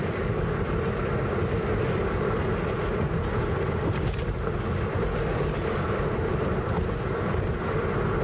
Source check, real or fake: real